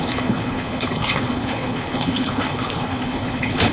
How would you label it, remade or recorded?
remade